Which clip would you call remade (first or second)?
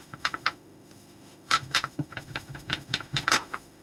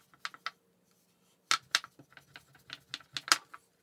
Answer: first